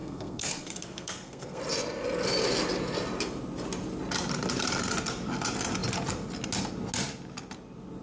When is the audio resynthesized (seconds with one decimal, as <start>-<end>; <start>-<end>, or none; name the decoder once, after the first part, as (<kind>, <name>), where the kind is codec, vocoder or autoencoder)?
0.0-1.6 (codec, SNAC)